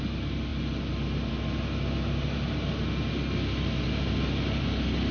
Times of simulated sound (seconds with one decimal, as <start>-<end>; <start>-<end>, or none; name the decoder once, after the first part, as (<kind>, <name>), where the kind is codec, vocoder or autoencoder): none